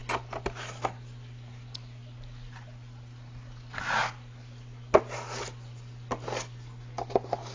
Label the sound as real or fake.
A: real